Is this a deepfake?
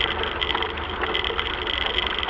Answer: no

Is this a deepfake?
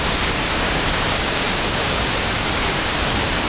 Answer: yes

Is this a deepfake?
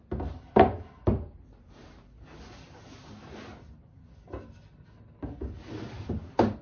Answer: no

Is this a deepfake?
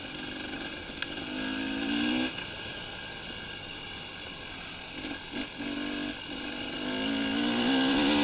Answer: no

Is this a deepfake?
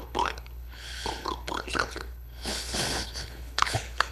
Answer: yes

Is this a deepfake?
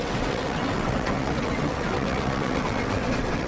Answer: yes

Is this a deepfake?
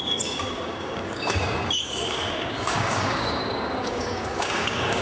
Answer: yes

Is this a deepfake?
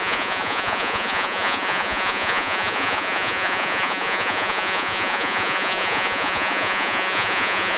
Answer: yes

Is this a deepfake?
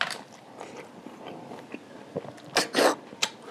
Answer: no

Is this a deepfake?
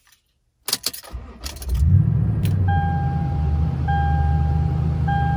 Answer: no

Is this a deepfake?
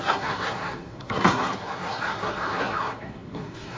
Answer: yes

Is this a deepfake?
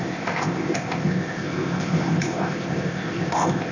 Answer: yes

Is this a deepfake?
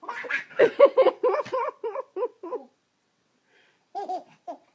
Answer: yes